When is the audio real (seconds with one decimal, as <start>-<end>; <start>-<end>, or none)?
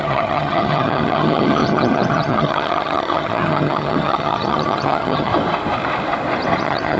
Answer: 5.3-6.6